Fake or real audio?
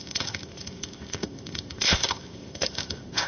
fake